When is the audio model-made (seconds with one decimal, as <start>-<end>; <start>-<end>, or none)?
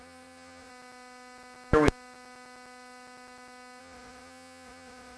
0.0-0.7; 3.8-5.2